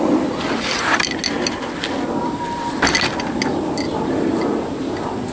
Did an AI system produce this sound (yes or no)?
no